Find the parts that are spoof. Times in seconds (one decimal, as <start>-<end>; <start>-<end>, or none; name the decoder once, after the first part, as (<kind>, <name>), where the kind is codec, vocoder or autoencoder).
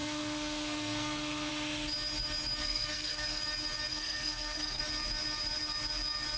0.0-1.5 (codec, SNAC); 2.6-3.4; 3.9-4.8